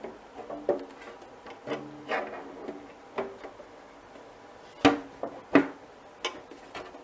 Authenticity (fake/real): real